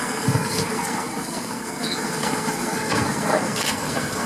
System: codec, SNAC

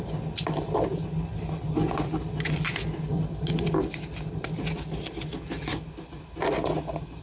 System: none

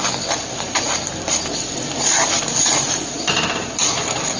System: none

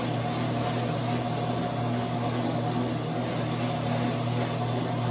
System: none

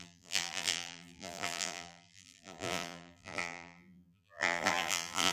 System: vocoder, BigVGAN v2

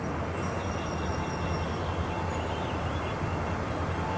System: none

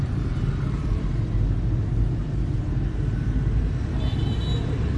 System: none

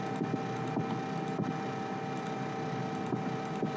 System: none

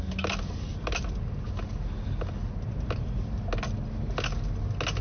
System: none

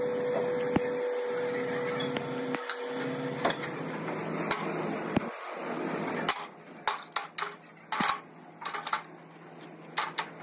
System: none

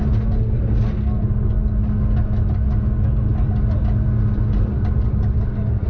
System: none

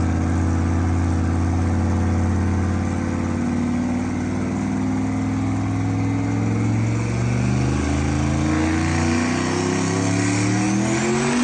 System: none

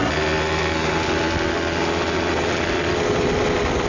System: none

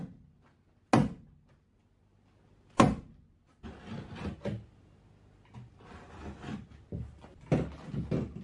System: none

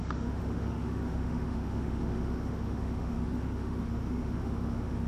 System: autoencoder, DAC-VAE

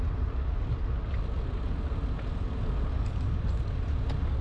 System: none